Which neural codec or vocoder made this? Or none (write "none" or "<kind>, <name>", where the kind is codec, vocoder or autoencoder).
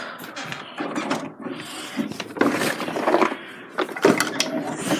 none